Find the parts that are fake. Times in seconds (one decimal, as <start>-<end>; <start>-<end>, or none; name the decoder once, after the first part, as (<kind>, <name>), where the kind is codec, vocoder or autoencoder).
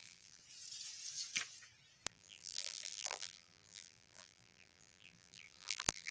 0.0-0.4 (vocoder, BigVGAN v2); 2.1-6.1